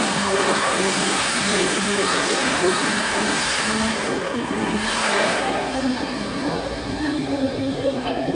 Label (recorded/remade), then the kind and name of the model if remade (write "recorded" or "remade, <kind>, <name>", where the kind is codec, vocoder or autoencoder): remade, codec, SNAC